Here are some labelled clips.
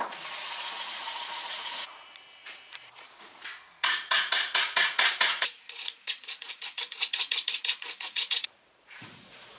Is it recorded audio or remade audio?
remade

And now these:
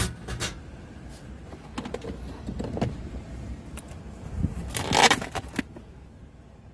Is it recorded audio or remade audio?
recorded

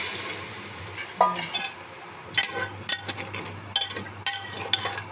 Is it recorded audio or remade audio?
recorded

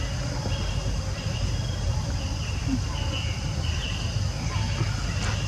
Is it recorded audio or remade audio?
recorded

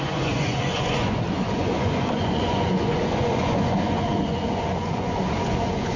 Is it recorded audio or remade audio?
remade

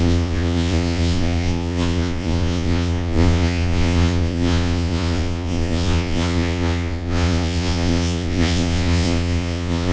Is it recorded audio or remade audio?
remade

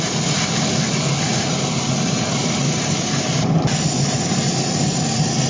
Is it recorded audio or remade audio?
recorded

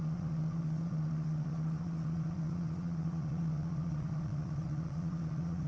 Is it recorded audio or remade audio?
remade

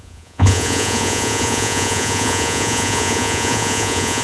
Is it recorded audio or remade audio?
remade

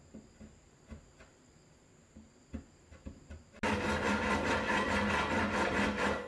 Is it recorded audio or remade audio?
recorded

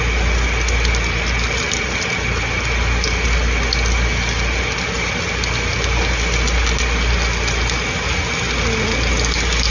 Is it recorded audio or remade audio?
recorded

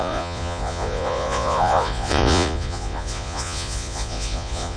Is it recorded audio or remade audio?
remade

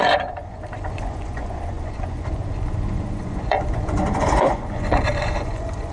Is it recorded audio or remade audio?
remade